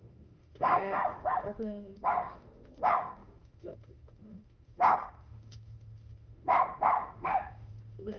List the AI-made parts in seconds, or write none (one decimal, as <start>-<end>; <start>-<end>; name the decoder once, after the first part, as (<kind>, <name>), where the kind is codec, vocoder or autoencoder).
0.0-8.2 (autoencoder, DAC-VAE)